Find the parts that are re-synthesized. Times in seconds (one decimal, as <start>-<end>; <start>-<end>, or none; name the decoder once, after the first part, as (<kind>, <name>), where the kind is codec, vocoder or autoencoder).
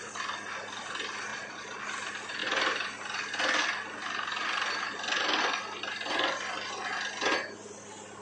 1.3-1.8 (vocoder, Vocos)